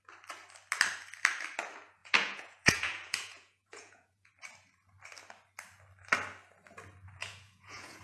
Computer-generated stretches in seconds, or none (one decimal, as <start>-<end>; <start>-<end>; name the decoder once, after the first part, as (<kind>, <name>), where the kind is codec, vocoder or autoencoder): 2.0-4.3 (vocoder, Vocos); 7.2-8.0